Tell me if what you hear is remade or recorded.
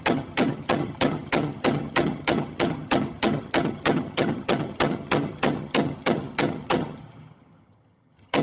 remade